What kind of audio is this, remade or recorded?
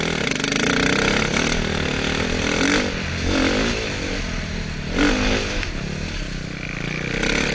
recorded